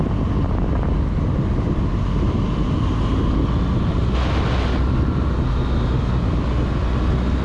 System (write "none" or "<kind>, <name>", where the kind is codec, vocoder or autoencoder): none